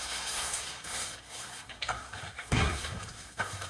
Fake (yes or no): yes